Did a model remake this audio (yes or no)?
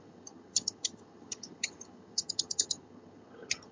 yes